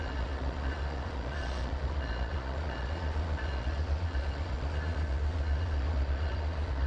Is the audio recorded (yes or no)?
no